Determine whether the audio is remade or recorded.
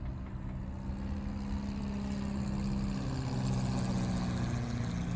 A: recorded